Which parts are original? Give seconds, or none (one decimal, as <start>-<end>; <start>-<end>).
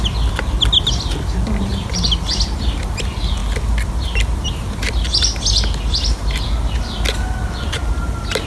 0.0-8.5